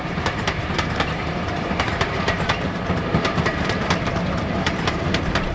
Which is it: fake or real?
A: fake